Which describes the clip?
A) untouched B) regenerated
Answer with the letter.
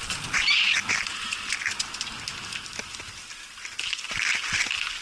A